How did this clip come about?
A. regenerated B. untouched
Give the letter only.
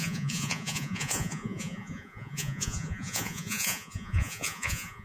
A